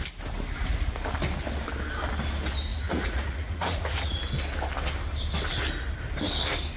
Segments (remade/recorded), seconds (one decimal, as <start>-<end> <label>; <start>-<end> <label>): 0.0-2.7 recorded; 2.7-4.2 remade; 4.2-6.8 recorded